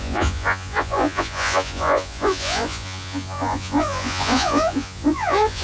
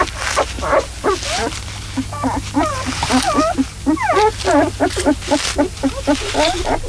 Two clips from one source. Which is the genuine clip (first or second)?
second